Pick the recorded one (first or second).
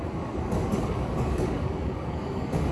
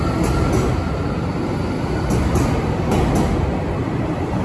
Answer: second